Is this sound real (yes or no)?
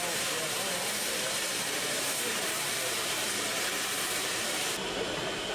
no